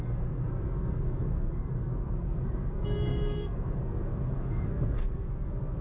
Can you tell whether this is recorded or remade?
remade